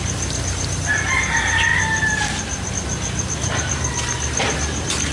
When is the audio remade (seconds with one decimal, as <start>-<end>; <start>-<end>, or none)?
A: none